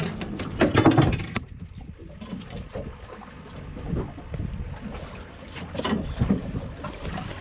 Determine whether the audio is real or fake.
real